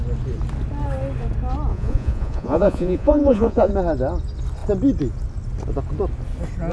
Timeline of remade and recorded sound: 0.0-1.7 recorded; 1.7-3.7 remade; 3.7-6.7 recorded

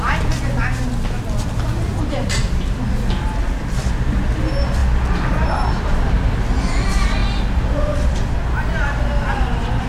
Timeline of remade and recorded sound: 0.0-1.9 recorded; 1.9-2.7 remade; 2.7-9.9 recorded

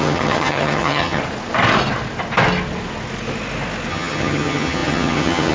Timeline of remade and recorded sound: 0.0-1.2 remade; 1.2-3.9 recorded; 3.9-5.5 remade